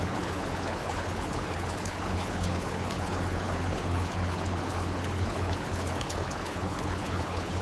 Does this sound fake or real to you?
fake